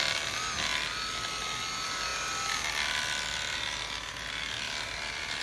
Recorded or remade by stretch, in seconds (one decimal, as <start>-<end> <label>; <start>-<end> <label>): 0.0-5.4 recorded